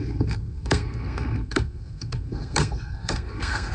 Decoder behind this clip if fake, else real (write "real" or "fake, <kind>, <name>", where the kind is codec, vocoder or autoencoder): fake, codec, SNAC